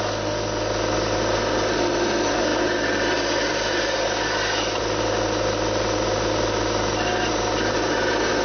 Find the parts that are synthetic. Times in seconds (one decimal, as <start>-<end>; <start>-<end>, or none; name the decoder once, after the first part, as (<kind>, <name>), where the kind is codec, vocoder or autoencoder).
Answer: none

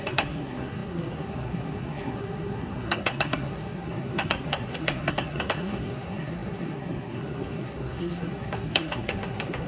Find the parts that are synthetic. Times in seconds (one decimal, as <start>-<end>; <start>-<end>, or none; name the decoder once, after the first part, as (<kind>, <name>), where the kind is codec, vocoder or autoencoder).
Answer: 0.0-9.7 (codec, SNAC)

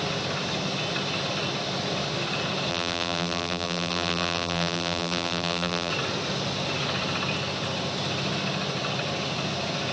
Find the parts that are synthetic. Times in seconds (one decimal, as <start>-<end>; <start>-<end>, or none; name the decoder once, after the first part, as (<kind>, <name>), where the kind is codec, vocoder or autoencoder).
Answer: 2.7-5.9 (vocoder, BigVGAN v2)

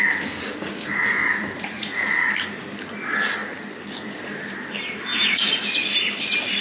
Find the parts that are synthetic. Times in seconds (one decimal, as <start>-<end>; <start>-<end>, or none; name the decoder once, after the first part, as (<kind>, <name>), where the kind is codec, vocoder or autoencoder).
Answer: 1.2-2.2 (vocoder, Vocos); 5.1-5.6

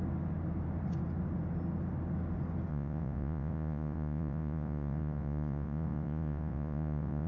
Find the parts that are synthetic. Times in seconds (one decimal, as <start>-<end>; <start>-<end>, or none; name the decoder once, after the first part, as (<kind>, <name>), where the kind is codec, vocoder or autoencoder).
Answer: 2.7-7.3 (vocoder, Vocos)